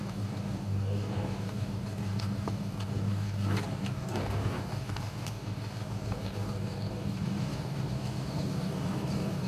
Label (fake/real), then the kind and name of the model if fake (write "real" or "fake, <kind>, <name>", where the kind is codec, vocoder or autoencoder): fake, codec, DAC